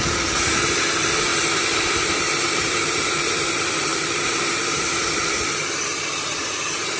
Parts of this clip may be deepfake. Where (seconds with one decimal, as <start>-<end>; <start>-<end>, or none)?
0.0-7.0